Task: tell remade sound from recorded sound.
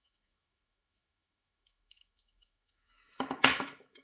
remade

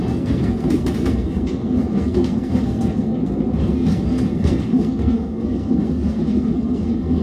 remade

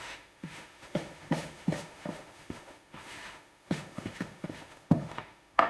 remade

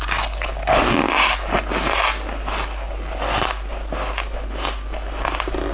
recorded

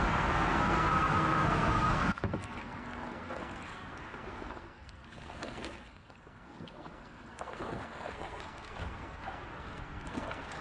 remade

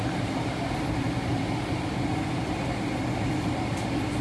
recorded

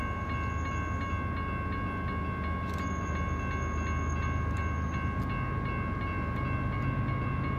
recorded